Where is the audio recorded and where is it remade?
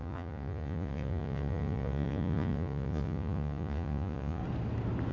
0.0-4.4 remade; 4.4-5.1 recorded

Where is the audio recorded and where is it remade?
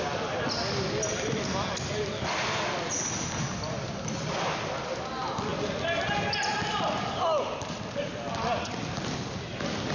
0.0-9.9 recorded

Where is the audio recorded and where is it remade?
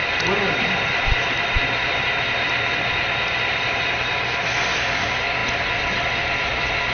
0.0-5.4 remade; 5.4-6.9 recorded